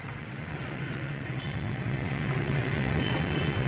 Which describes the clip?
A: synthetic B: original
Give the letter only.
A